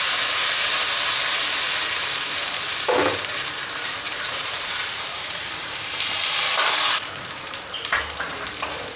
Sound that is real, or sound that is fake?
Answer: fake